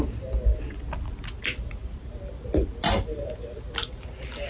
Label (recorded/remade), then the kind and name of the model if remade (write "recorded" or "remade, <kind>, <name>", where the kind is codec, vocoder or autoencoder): recorded